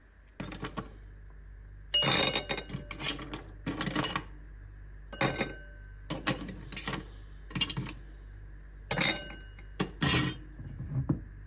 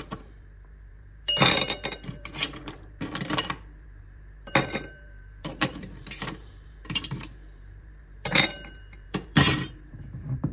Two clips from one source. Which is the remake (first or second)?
second